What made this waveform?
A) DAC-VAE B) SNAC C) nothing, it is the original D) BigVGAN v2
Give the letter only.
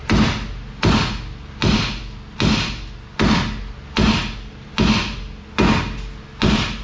C